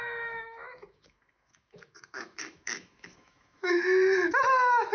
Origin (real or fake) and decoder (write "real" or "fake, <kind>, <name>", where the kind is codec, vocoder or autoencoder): fake, autoencoder, DAC-VAE